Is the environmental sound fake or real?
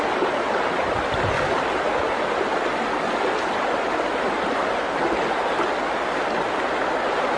real